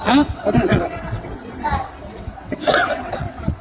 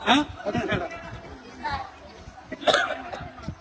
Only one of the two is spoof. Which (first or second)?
first